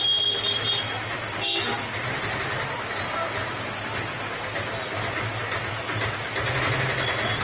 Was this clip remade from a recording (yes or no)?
no